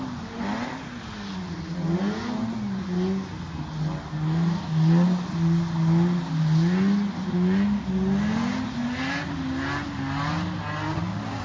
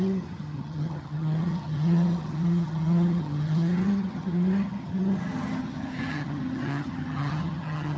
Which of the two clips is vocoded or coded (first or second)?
second